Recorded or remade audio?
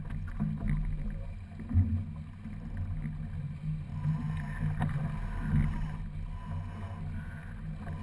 recorded